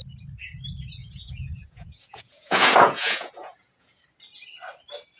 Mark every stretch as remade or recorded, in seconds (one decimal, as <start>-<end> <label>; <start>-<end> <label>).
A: 0.0-1.0 recorded; 1.0-4.0 remade; 4.0-5.2 recorded